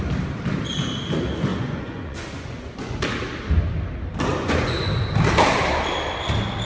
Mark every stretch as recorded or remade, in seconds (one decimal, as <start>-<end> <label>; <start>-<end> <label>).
0.0-1.5 recorded; 1.5-3.0 remade; 3.0-4.3 recorded; 4.3-4.9 remade; 4.9-6.6 recorded